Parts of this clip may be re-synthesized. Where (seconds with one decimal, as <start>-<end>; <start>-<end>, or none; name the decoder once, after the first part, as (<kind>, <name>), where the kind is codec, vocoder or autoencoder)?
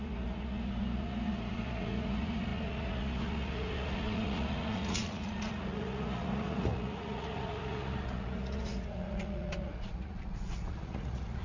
0.0-11.4 (vocoder, Vocos)